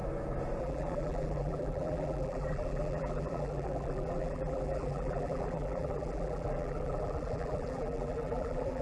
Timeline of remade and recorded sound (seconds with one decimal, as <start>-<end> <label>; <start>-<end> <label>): 0.0-0.6 recorded; 0.6-8.8 remade

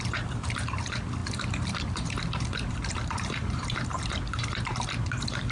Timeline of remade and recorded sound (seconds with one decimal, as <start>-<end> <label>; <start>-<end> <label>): 0.0-5.5 remade